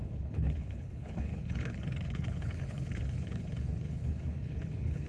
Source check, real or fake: fake